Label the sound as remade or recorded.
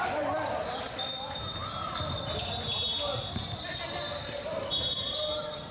recorded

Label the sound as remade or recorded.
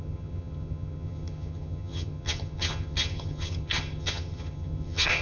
remade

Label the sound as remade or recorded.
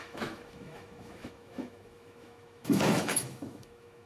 remade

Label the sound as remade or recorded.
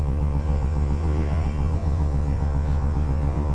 remade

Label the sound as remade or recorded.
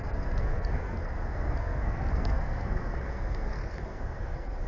remade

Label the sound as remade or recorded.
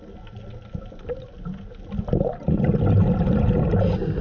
recorded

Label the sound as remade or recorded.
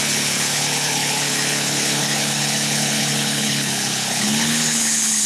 remade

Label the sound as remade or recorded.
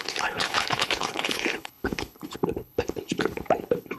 remade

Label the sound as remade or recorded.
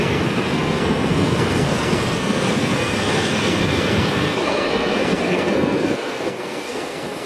remade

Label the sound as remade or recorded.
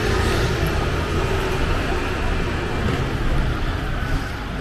recorded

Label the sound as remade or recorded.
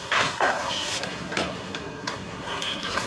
remade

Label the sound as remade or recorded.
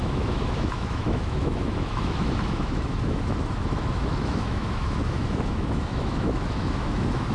remade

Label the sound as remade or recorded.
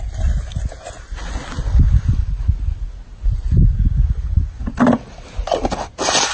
recorded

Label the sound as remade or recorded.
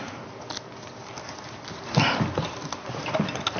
recorded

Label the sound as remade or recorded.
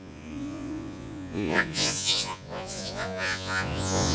remade